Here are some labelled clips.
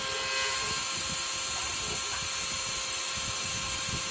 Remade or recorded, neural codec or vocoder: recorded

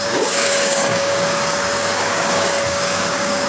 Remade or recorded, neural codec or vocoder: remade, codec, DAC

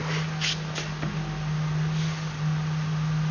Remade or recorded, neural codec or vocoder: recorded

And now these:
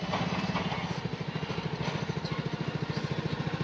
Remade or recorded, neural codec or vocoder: recorded